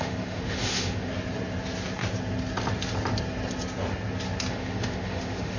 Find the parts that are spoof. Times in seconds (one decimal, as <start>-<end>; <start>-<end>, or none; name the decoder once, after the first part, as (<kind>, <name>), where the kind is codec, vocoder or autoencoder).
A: 0.0-1.1 (autoencoder, DAC-VAE); 4.5-5.6